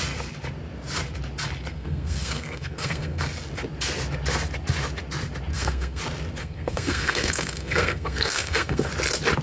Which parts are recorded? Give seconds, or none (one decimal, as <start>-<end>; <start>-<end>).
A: 0.0-1.7; 3.2-5.5; 6.0-6.4; 8.9-9.4